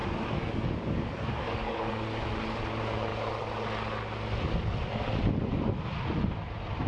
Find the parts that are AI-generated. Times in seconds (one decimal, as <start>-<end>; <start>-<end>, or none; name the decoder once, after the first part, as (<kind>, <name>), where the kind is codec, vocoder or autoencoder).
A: 0.0-1.9 (codec, DAC)